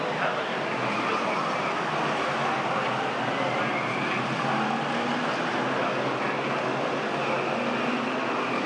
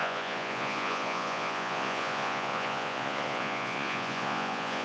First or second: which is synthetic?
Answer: second